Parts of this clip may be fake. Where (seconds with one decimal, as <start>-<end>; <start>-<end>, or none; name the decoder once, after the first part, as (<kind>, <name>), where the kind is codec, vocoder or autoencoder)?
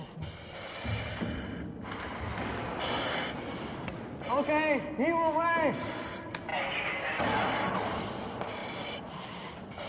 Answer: none